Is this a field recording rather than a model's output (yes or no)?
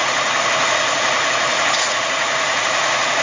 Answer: no